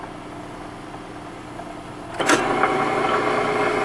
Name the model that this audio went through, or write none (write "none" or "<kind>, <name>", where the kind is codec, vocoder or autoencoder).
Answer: none